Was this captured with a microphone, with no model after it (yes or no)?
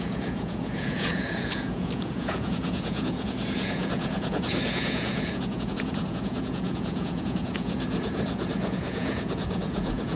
no